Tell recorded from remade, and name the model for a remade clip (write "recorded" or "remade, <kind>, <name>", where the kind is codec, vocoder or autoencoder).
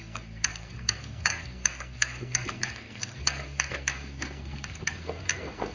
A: remade, codec, SNAC